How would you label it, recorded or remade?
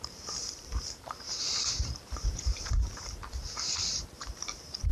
remade